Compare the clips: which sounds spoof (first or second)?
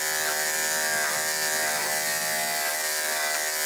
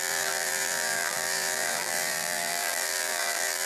second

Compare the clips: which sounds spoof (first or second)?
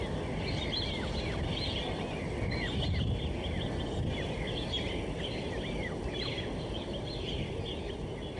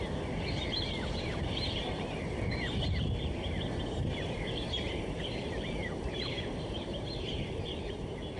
second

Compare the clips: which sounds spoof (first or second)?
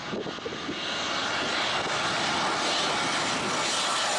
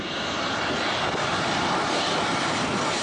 second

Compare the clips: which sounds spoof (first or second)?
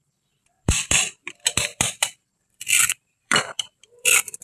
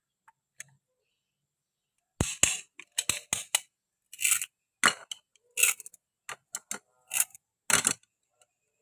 first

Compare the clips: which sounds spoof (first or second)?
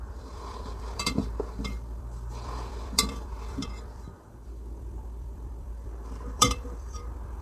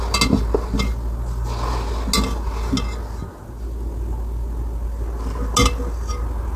first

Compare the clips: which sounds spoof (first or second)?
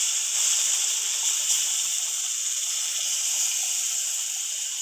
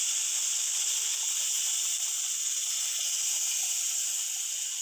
first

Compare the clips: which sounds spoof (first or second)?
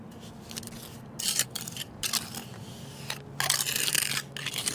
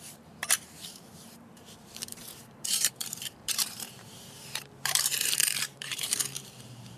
second